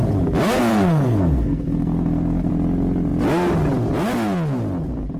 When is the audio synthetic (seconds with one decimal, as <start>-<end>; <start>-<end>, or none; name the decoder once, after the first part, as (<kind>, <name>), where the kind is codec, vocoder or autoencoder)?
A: 0.7-2.5 (codec, SNAC)